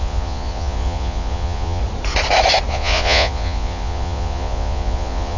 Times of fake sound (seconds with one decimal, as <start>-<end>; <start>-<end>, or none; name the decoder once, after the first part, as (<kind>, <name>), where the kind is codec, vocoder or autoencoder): 0.0-1.8 (vocoder, Vocos); 2.7-5.4